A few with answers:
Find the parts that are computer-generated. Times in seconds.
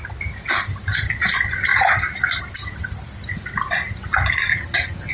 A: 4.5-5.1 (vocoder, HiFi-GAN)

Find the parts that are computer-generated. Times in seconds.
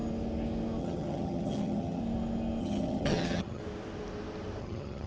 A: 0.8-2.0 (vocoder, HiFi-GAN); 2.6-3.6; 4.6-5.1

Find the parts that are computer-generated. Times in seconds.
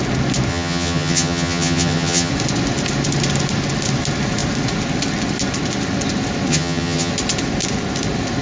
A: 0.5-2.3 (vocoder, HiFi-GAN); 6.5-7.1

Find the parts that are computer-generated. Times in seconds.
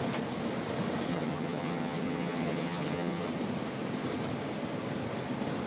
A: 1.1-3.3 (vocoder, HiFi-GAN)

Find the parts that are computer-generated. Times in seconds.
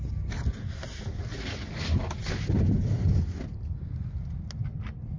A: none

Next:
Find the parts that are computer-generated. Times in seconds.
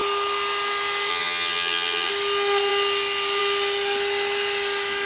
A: 1.1-2.1 (vocoder, HiFi-GAN)